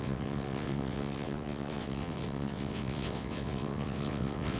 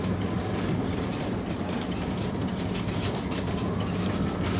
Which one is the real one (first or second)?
second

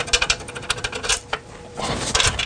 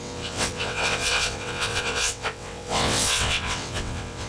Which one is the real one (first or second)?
first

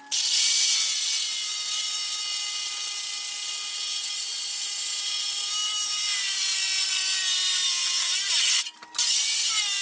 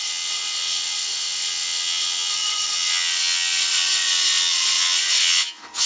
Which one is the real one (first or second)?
first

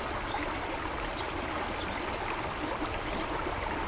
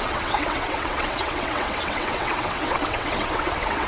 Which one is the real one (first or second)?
first